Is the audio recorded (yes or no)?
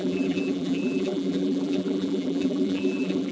no